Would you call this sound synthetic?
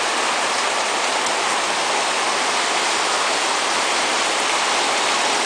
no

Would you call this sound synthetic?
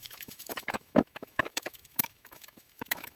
yes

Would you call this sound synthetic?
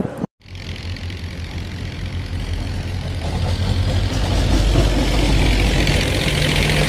no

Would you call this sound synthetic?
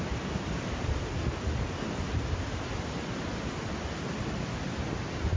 no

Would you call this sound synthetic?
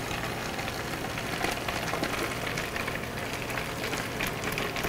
no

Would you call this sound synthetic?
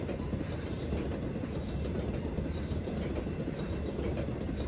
no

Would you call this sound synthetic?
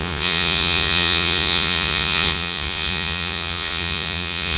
yes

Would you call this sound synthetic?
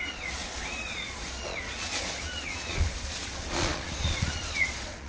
yes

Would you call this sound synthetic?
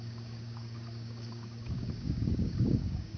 yes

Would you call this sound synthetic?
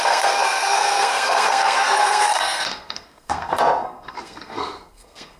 yes